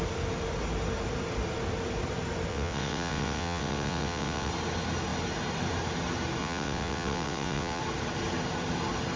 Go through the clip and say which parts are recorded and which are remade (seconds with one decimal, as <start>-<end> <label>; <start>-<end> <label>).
0.0-2.5 recorded; 2.5-4.5 remade; 4.5-6.4 recorded; 6.4-7.8 remade; 7.8-9.2 recorded

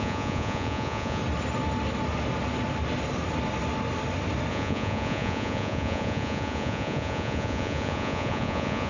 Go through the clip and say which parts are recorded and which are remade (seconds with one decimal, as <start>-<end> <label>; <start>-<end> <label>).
0.0-1.2 remade; 1.2-4.5 recorded; 4.5-8.9 remade

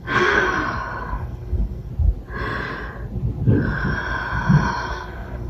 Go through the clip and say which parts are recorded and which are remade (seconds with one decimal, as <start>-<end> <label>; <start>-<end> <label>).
0.0-0.4 remade; 0.4-1.0 recorded; 1.0-1.9 remade; 1.9-4.9 recorded; 4.9-5.5 remade

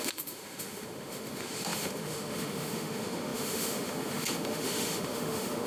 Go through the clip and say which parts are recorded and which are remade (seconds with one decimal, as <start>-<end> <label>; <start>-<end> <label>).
0.0-5.7 remade

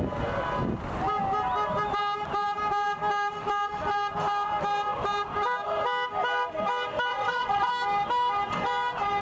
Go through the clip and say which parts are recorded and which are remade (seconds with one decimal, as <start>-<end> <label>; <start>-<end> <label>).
0.0-7.1 recorded; 7.1-7.7 remade; 7.7-9.2 recorded

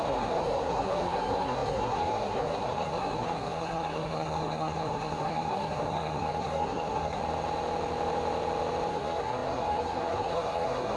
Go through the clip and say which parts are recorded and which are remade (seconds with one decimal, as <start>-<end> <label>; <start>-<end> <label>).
0.0-7.2 remade; 7.2-8.9 recorded; 8.9-11.0 remade